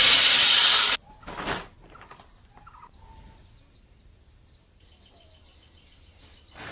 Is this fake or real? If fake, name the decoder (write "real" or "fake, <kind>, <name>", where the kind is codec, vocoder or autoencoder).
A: real